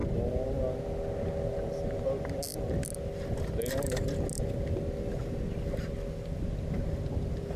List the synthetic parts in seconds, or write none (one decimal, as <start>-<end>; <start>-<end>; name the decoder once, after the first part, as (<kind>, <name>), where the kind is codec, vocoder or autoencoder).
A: none